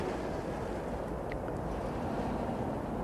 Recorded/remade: recorded